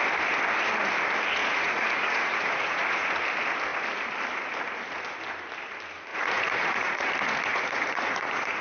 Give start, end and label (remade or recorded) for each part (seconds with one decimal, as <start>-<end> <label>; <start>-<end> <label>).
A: 0.0-1.4 recorded; 1.4-3.1 remade; 3.1-6.1 recorded; 6.1-7.1 remade; 7.1-7.5 recorded; 7.5-8.6 remade